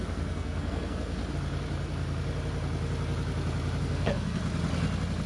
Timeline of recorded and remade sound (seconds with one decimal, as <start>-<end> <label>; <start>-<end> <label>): 0.0-1.2 remade; 1.2-3.8 recorded; 3.8-4.4 remade; 4.4-5.3 recorded